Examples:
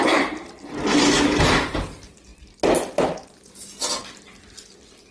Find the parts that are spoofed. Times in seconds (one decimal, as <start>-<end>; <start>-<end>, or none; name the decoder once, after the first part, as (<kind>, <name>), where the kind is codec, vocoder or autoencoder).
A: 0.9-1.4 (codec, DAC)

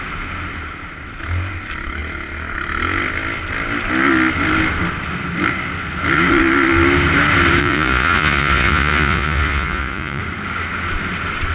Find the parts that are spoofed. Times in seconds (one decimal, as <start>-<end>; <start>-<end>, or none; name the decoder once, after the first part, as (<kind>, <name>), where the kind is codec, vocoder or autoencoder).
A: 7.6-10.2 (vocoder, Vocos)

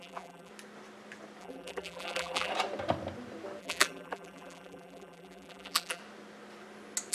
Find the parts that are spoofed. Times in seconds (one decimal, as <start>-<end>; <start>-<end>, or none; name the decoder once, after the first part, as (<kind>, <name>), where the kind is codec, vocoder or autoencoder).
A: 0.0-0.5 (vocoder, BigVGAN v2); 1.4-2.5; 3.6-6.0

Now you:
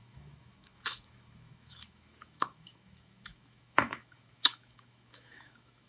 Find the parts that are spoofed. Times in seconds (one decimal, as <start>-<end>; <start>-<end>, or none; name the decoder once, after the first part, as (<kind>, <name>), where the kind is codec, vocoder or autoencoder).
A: 0.0-5.9 (autoencoder, DAC-VAE)

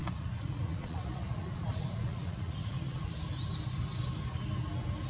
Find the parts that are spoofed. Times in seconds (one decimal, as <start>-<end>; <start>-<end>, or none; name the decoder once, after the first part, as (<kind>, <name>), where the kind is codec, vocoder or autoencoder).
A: 0.0-3.1 (vocoder, Vocos)

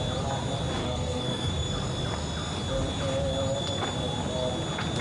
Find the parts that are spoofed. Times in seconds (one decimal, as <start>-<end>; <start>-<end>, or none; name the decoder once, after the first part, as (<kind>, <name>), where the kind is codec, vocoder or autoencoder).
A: 0.8-1.5 (codec, SNAC)

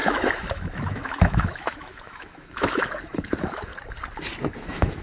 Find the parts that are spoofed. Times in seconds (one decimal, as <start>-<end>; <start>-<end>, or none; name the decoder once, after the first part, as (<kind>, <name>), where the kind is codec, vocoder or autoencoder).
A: 0.0-3.7 (autoencoder, DAC-VAE); 4.6-5.0